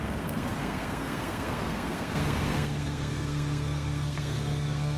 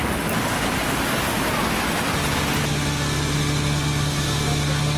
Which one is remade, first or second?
first